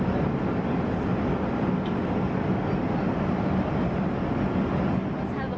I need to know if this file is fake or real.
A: real